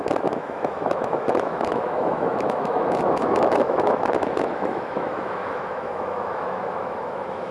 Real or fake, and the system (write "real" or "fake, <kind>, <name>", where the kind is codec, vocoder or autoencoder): fake, autoencoder, DAC-VAE